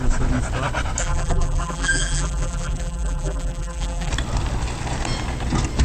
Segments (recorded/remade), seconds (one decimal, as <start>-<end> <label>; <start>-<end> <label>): 0.0-1.0 recorded; 1.0-4.1 remade; 4.1-5.8 recorded